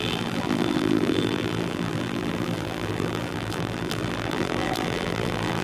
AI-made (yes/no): yes